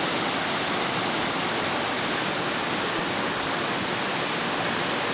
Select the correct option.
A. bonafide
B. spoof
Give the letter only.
A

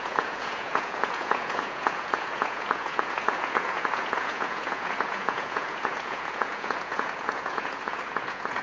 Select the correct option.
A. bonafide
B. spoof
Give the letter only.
B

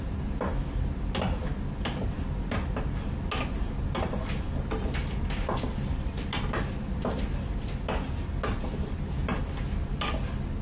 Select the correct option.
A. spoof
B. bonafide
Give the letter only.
B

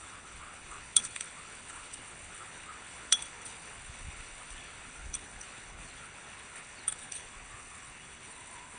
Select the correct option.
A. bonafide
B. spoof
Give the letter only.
B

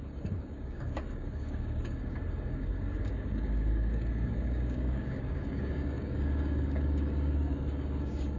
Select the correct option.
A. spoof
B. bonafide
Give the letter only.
A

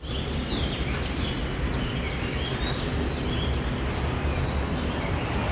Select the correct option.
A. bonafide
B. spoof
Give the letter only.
A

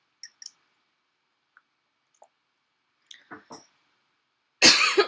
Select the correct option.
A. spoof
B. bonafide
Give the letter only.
B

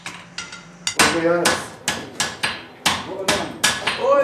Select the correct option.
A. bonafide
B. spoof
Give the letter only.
A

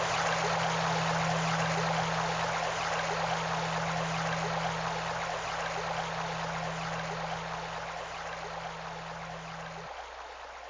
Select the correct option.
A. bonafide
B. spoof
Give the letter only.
A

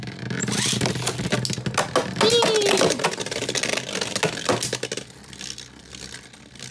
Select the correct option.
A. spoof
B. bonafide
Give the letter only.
B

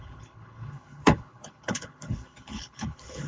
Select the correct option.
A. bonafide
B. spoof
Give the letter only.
B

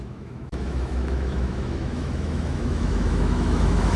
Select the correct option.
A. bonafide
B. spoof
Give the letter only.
B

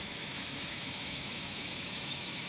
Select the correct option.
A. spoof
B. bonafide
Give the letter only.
A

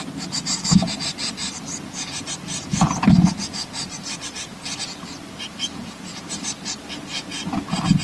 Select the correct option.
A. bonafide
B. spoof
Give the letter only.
A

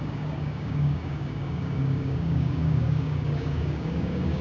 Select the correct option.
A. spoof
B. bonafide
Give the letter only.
A